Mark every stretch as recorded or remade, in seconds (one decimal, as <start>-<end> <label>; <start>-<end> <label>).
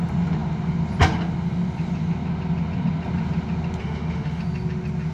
0.0-3.8 recorded; 3.8-4.4 remade; 4.4-5.1 recorded